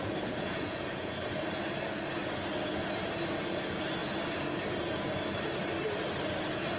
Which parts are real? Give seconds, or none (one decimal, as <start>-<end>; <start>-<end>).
1.3-6.8